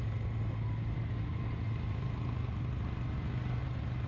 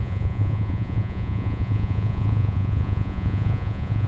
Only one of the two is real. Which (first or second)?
first